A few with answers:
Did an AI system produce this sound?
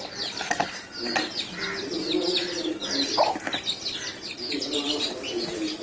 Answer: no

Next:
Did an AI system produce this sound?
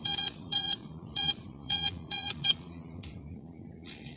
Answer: yes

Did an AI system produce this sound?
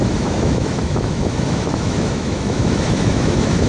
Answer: yes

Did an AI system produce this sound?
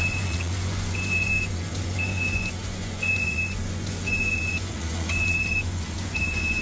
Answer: yes